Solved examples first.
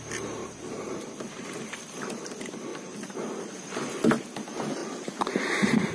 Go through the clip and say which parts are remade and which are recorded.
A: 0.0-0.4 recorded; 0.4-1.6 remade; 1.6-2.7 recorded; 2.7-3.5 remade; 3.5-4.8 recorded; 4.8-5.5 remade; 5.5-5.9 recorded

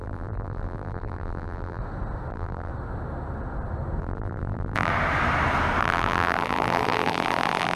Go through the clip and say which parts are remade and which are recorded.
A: 0.0-1.8 remade; 1.8-2.3 recorded; 2.3-2.7 remade; 2.7-4.0 recorded; 4.0-4.9 remade; 4.9-5.8 recorded; 5.8-7.8 remade

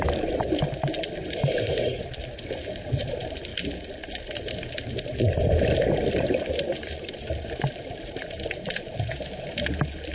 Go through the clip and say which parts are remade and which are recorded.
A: 0.0-3.5 remade; 3.5-6.1 recorded; 6.1-10.1 remade